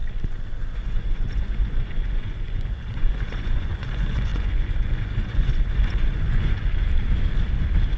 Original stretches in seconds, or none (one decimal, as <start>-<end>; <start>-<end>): 0.0-0.7; 6.7-8.0